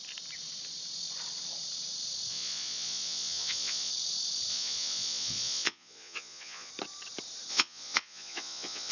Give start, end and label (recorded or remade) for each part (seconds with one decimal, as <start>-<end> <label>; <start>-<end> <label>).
0.0-2.3 recorded; 2.3-3.9 remade; 3.9-4.5 recorded; 4.5-6.7 remade; 6.7-7.5 recorded; 7.5-8.9 remade